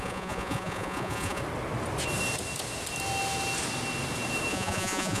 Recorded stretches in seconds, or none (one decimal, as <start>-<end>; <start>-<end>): 1.4-4.5